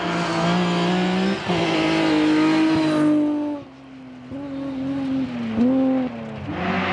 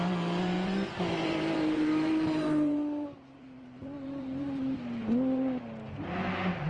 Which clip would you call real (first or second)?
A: first